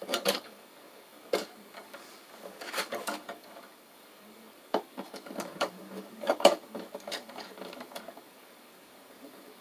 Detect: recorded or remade remade